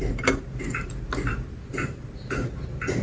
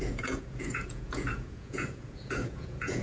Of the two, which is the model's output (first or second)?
second